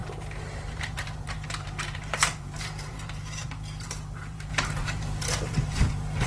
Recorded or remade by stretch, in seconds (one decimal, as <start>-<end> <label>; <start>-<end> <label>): 0.0-6.3 remade